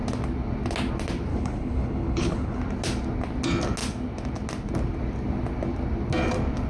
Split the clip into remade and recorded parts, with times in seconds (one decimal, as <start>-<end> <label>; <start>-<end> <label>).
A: 0.0-1.3 recorded; 1.3-2.6 remade; 2.6-6.7 recorded